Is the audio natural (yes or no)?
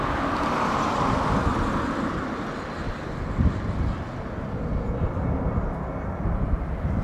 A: yes